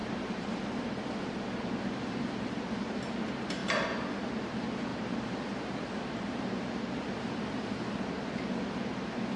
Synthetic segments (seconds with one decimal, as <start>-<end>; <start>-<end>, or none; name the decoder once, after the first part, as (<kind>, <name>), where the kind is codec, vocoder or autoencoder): 0.0-0.6 (vocoder, BigVGAN v2); 4.9-7.8